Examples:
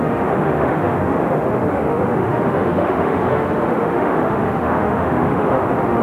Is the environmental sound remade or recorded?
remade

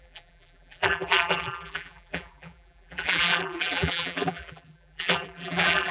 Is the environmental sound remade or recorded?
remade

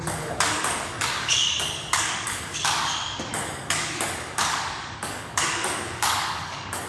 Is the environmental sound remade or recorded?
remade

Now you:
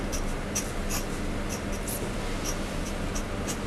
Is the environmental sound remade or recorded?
recorded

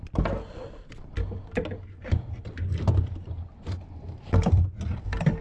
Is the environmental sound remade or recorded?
recorded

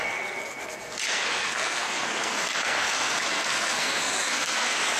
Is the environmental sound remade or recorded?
remade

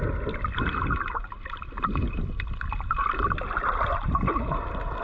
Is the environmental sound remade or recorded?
recorded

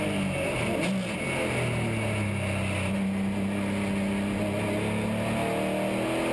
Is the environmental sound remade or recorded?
recorded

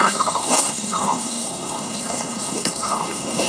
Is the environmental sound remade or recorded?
remade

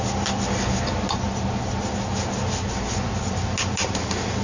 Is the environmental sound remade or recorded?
recorded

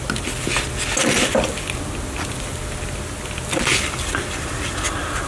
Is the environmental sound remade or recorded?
recorded